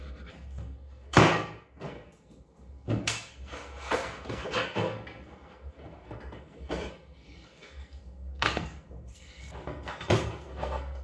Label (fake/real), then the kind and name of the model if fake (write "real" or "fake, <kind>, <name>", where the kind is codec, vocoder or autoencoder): fake, codec, SNAC